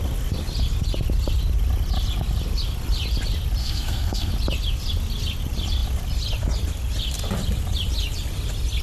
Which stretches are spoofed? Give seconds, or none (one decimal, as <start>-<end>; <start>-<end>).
3.6-4.3